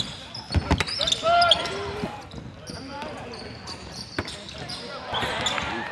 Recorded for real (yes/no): yes